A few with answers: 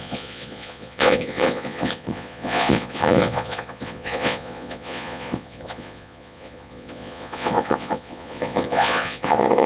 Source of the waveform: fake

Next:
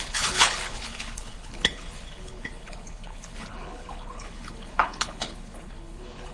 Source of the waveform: fake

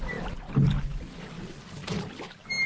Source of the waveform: real